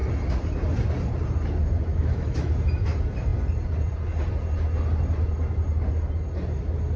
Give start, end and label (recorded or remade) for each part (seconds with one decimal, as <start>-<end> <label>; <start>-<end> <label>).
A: 0.0-1.9 recorded; 1.9-2.5 remade; 2.5-7.0 recorded